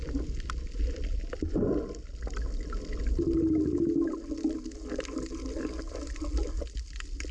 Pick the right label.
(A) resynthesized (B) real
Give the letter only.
B